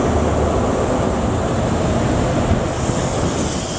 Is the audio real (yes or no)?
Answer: yes